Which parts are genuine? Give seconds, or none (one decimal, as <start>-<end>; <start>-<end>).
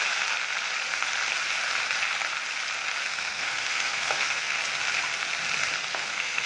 0.0-3.0; 4.6-5.9